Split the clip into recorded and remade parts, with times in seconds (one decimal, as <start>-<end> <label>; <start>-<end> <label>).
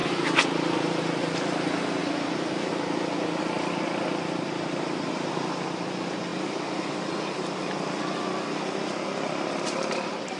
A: 0.0-0.9 recorded; 0.9-10.4 remade